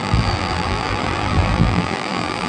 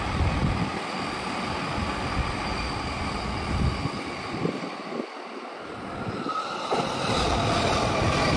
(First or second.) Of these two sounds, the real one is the second